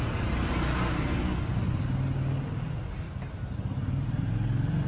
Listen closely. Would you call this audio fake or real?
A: real